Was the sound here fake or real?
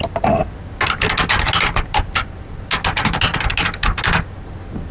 real